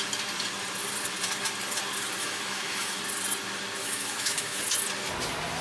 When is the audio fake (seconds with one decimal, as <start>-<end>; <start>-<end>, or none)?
2.2-3.0; 3.8-4.6